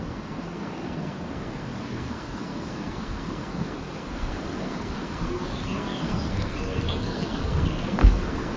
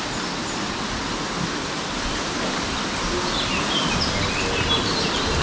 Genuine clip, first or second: second